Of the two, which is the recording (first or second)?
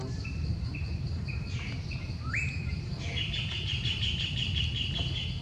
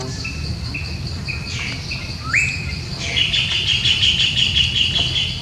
second